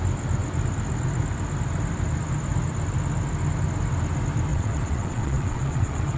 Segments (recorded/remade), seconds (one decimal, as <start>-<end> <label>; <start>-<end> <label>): 0.0-4.5 recorded; 4.5-6.2 remade